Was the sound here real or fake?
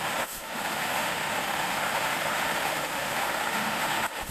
fake